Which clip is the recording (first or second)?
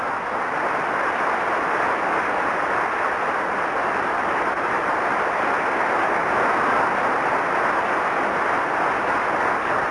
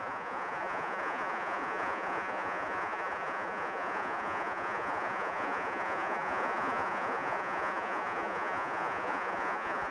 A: first